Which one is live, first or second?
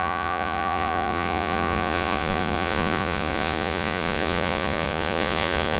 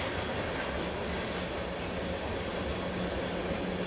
second